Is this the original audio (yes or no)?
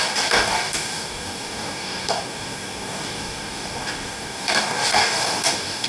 no